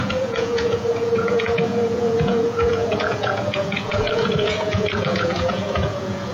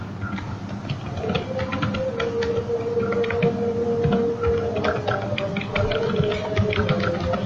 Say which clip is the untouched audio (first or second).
second